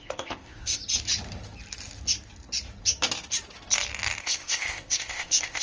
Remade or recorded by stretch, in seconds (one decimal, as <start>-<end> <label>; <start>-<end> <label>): 0.0-0.8 remade; 0.8-4.2 recorded; 4.2-5.6 remade